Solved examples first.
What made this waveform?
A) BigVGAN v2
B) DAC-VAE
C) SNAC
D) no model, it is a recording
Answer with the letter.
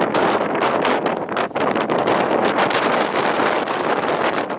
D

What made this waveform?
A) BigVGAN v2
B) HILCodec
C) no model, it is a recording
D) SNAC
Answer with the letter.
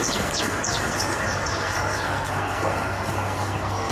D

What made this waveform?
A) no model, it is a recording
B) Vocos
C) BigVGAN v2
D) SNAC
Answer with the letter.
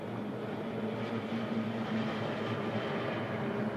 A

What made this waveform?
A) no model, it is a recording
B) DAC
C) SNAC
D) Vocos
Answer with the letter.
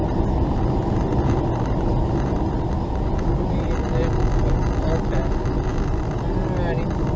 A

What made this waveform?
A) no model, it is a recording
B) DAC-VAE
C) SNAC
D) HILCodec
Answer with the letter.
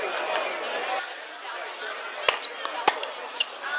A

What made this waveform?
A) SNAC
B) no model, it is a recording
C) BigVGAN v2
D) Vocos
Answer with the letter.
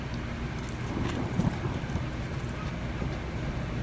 B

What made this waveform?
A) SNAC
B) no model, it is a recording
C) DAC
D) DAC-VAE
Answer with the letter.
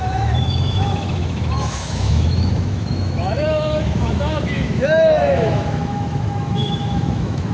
D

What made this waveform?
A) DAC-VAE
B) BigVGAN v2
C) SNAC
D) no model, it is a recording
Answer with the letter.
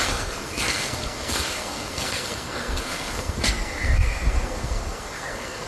C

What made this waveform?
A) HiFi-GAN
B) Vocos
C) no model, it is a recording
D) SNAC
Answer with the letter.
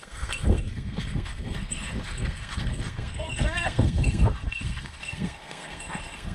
D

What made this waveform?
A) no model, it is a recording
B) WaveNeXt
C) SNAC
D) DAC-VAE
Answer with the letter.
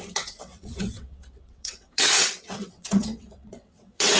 B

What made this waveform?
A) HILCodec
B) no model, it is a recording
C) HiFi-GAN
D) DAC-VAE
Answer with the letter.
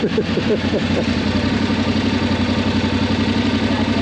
B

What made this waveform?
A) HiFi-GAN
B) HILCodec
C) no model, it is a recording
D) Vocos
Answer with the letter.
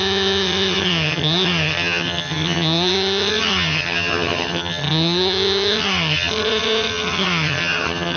A